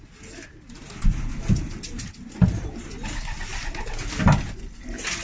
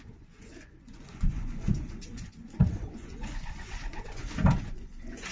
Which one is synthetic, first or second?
second